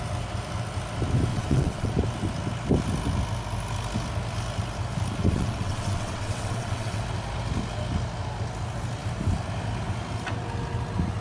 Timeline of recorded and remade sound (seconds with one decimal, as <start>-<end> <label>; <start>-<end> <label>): 0.0-1.3 recorded; 1.3-1.9 remade; 1.9-5.2 recorded; 5.2-7.0 remade; 7.0-11.2 recorded

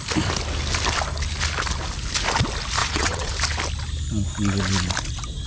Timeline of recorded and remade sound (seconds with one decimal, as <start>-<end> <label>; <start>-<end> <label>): 0.0-2.8 recorded; 2.8-3.3 remade; 3.3-5.5 recorded

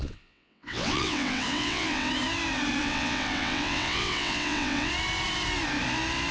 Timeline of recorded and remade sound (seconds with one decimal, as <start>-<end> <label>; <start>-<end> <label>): 0.0-2.1 remade; 2.1-2.8 recorded; 2.8-4.9 remade; 4.9-6.3 recorded